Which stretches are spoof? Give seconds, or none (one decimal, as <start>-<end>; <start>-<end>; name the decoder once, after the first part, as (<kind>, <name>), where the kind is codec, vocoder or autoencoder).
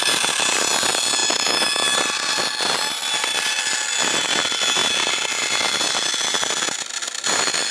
none